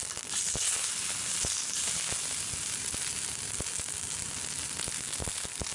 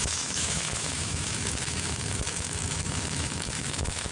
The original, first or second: first